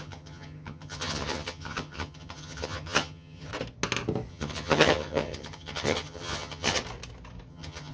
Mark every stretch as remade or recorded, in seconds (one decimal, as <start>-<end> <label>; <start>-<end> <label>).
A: 0.0-3.5 remade; 3.5-4.3 recorded; 4.3-6.8 remade; 6.8-7.5 recorded; 7.5-7.9 remade